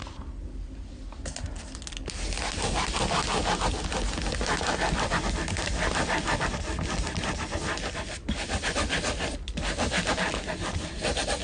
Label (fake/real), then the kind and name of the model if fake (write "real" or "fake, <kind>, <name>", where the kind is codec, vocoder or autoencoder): real